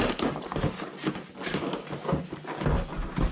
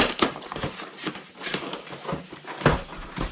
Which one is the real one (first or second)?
first